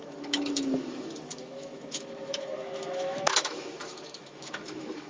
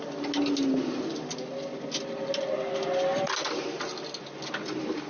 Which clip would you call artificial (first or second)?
first